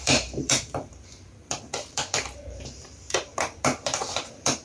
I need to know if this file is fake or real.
fake